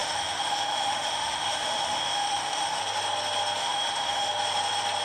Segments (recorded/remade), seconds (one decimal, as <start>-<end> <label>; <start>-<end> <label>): 0.0-2.8 remade; 2.8-3.6 recorded; 3.6-4.3 remade; 4.3-5.0 recorded